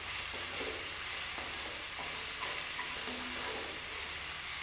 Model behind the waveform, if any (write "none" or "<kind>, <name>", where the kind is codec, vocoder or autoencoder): none